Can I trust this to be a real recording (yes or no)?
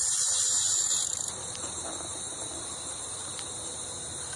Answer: no